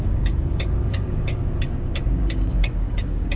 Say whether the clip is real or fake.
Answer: fake